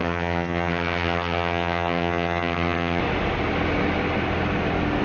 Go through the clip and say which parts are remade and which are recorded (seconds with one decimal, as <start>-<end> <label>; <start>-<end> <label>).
0.0-3.0 remade; 3.0-5.0 recorded